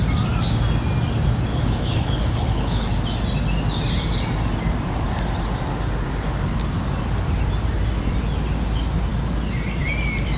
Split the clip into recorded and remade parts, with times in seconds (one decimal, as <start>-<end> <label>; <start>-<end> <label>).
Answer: 0.0-1.5 recorded; 1.5-2.9 remade; 2.9-10.4 recorded